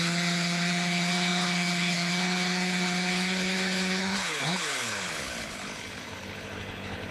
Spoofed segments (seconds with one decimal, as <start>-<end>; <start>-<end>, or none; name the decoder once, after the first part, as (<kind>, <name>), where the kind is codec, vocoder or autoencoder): 0.0-7.1 (codec, HILCodec)